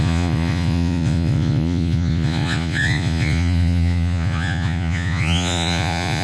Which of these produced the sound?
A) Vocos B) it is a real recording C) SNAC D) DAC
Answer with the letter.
A